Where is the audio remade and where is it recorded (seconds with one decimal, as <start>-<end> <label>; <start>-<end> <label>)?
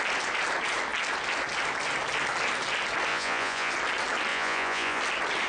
0.0-3.1 recorded; 3.1-3.7 remade; 3.7-4.3 recorded; 4.3-5.0 remade; 5.0-5.5 recorded